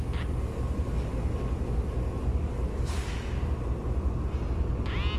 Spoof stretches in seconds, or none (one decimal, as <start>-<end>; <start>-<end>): 2.3-3.1